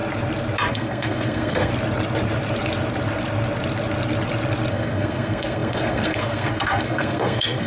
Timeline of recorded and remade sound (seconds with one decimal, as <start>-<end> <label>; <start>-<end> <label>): 0.0-0.7 recorded; 0.7-1.7 remade; 1.7-4.7 recorded; 4.7-7.7 remade

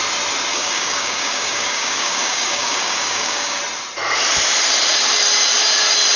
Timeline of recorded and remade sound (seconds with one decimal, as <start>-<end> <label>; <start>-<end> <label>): 0.0-0.5 recorded; 0.5-3.6 remade; 3.6-6.2 recorded

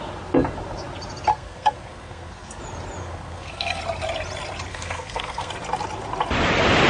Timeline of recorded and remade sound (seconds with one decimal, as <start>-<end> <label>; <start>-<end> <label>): 0.0-1.3 recorded; 1.3-2.6 remade; 2.6-3.0 recorded; 3.0-3.8 remade; 3.8-4.7 recorded; 4.7-5.5 remade; 5.5-6.9 recorded